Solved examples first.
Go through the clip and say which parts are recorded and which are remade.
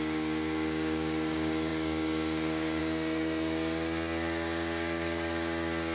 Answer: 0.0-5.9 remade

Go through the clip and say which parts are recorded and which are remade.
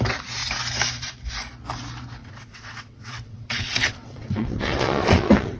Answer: 0.0-2.2 recorded; 2.2-5.6 remade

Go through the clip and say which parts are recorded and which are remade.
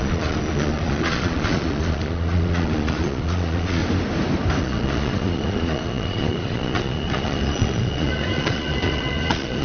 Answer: 0.0-3.8 remade; 3.8-4.6 recorded; 4.6-9.6 remade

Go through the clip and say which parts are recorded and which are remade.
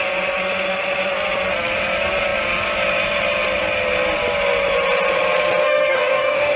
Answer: 0.0-5.6 recorded; 5.6-6.6 remade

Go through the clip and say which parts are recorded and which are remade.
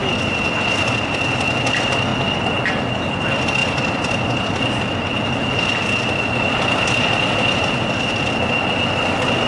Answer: 0.0-9.5 recorded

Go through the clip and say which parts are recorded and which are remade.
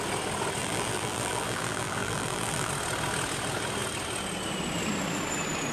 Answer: 0.0-0.6 recorded; 0.6-2.7 remade; 2.7-5.7 recorded